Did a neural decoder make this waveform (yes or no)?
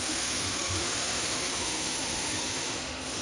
yes